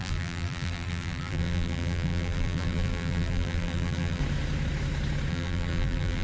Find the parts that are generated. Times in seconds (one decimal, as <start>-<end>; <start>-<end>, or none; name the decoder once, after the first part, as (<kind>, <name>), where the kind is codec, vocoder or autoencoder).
0.0-4.2 (vocoder, BigVGAN v2); 5.3-6.2